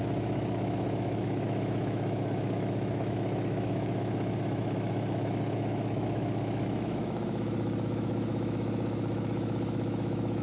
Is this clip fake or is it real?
fake